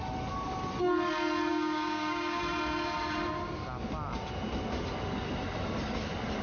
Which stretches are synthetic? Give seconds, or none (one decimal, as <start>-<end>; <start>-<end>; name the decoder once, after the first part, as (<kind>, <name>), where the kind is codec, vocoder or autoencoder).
1.5-2.4 (codec, DAC)